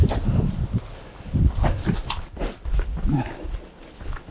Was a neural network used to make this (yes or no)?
no